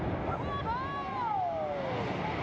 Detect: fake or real real